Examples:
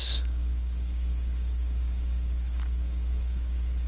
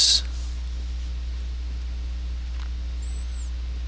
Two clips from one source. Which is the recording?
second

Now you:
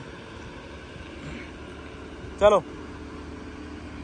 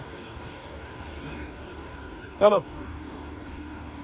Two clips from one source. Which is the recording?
first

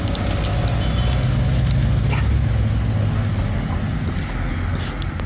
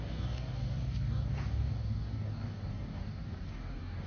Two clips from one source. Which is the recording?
first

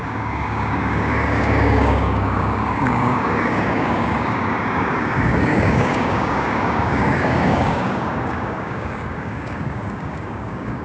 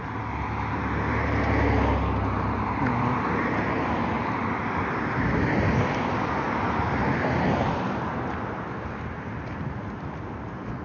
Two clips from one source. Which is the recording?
second